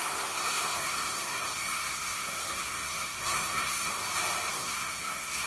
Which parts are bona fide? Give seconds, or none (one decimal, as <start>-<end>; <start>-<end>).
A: 3.9-4.5